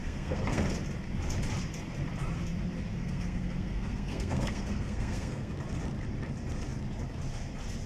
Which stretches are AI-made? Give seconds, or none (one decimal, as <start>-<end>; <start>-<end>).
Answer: 0.0-0.6; 2.9-5.5